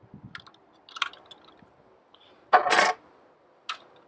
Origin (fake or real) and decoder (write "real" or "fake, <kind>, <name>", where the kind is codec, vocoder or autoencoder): real